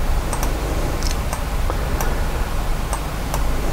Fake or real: real